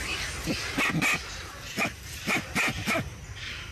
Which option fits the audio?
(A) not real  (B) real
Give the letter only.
B